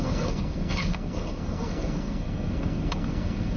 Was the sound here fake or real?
fake